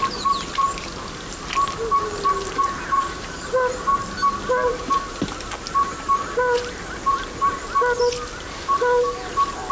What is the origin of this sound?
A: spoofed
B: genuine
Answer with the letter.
B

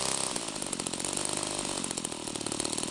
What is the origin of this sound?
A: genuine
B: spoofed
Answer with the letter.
A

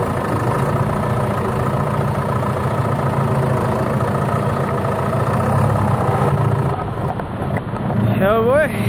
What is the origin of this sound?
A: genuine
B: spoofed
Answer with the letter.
A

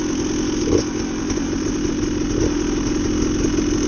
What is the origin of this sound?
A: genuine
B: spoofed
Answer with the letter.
A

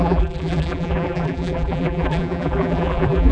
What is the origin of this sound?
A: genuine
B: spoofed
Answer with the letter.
B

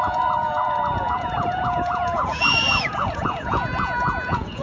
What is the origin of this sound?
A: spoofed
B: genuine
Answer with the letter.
A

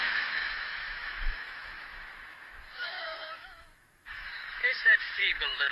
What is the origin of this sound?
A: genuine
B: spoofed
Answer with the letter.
B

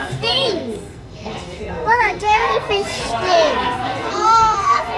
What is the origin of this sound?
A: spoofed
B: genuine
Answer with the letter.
A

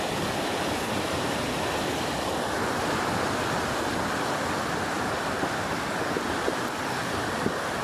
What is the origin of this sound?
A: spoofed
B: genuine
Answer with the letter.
A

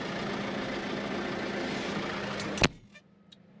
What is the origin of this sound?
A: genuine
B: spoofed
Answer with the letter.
A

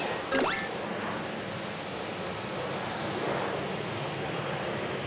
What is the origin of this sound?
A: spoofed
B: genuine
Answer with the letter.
B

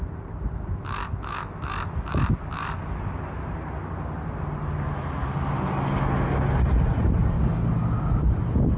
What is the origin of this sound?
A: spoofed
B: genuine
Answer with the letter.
B